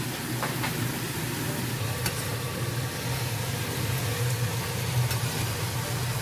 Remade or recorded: recorded